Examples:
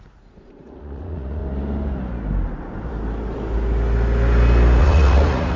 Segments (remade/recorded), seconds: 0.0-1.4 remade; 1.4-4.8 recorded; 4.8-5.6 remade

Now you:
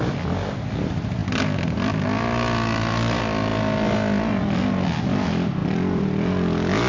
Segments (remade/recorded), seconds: 0.0-6.9 recorded

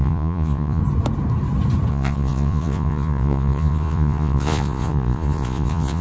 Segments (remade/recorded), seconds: 0.0-0.8 remade; 0.8-1.9 recorded; 1.9-6.0 remade

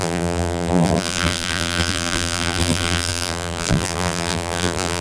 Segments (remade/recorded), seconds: 0.0-5.0 remade

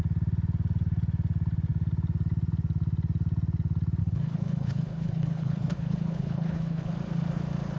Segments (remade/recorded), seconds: 0.0-4.0 recorded; 4.0-6.9 remade; 6.9-7.8 recorded